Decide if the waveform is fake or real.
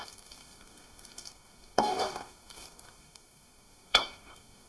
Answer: fake